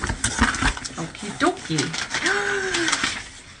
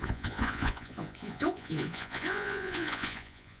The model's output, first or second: second